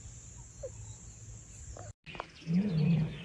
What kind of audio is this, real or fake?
real